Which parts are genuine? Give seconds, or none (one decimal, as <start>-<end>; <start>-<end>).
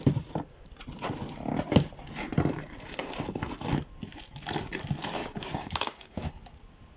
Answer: 0.0-5.2; 6.3-7.0